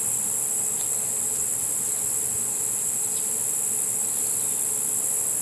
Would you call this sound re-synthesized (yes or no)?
no